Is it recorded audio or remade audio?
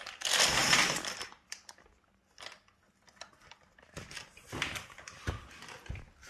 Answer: recorded